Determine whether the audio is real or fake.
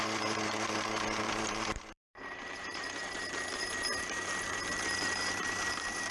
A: fake